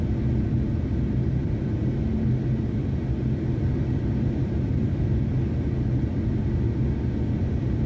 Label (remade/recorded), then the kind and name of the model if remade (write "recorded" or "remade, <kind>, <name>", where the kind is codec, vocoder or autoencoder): recorded